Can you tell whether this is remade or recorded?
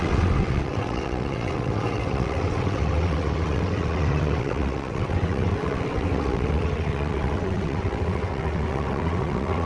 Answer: remade